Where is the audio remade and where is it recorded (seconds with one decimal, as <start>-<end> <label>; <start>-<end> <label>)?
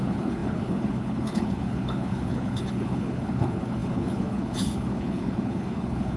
0.0-6.2 remade